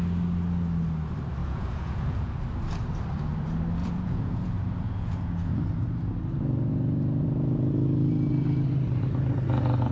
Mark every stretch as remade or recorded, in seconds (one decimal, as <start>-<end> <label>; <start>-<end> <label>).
0.0-1.4 recorded; 1.4-2.4 remade; 2.4-3.8 recorded; 3.8-5.6 remade; 5.6-9.9 recorded